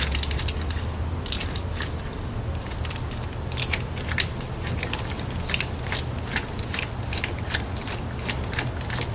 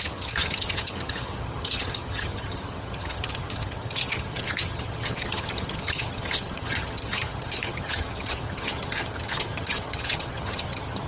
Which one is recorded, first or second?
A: first